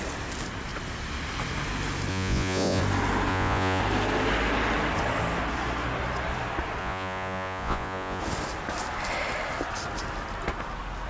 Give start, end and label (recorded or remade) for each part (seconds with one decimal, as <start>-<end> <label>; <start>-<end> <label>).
0.0-2.1 recorded; 2.1-2.8 remade; 2.8-3.3 recorded; 3.3-3.8 remade; 3.8-6.8 recorded; 6.8-8.2 remade; 8.2-11.1 recorded

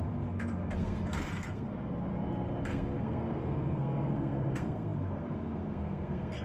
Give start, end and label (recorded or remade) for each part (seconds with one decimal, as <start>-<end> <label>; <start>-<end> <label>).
0.0-2.1 remade; 2.1-2.6 recorded; 2.6-6.4 remade

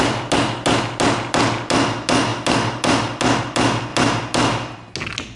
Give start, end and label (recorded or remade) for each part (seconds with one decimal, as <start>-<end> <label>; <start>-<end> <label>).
0.0-5.4 recorded

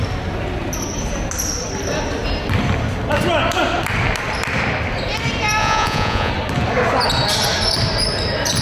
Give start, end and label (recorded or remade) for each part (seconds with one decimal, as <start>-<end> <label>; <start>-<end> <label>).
0.0-5.6 recorded; 5.6-6.3 remade; 6.3-8.6 recorded